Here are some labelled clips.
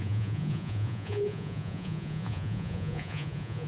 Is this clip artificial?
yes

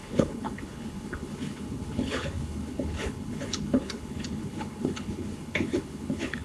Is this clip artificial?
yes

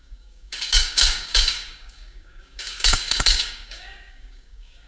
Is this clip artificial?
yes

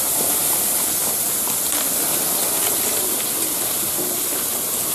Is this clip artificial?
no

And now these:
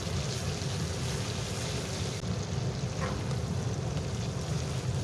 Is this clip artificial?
no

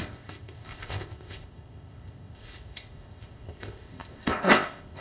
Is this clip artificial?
yes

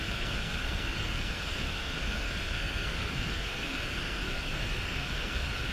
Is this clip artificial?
yes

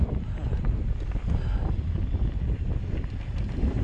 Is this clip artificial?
no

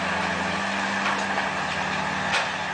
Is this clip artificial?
no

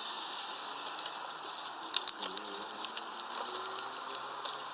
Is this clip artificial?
no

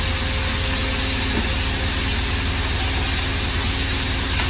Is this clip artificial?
no